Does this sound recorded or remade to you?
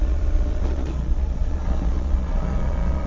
remade